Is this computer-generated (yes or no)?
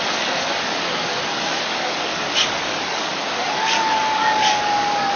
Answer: yes